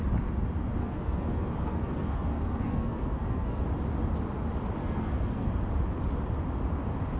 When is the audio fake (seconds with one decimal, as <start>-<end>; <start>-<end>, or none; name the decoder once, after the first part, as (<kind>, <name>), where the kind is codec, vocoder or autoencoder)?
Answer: 0.8-3.6 (codec, SNAC); 4.8-5.5